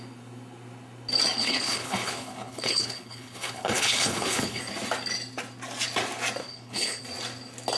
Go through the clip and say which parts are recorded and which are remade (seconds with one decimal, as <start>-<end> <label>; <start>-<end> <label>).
0.0-1.4 recorded; 1.4-4.6 remade; 4.6-6.4 recorded; 6.4-7.0 remade; 7.0-7.8 recorded